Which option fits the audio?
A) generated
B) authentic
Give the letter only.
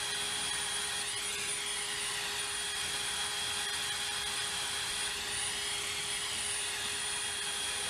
B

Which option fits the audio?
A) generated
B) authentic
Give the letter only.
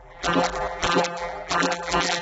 A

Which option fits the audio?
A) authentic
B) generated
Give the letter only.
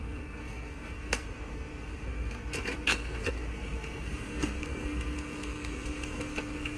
B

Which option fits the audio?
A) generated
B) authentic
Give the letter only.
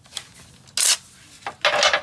B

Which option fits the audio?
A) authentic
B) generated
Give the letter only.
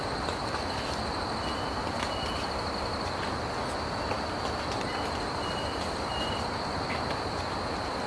A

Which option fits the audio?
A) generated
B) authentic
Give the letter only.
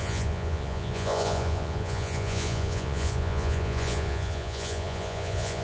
A